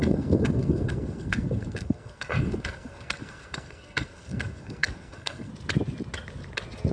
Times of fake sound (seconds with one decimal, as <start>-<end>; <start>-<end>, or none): 0.0-5.5